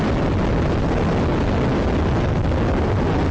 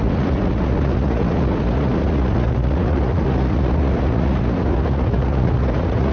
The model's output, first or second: second